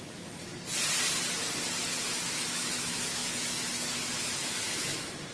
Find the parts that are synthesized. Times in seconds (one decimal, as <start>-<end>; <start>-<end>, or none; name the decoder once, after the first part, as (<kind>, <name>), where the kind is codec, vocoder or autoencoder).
0.0-0.5 (autoencoder, DAC-VAE); 2.0-5.3